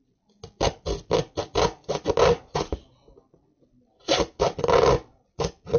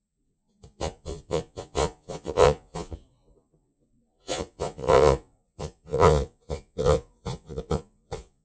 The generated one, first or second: second